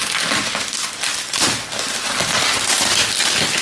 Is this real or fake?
real